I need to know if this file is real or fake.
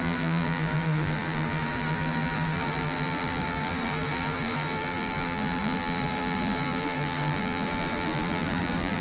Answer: fake